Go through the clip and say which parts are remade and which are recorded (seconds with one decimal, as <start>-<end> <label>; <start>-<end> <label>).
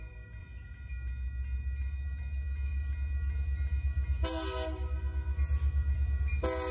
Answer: 0.0-0.4 recorded; 0.4-0.9 remade; 0.9-6.7 recorded